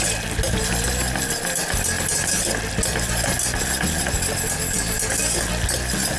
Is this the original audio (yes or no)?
yes